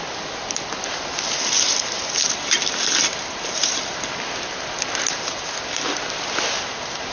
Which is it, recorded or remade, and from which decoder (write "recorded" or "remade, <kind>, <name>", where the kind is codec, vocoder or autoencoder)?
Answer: recorded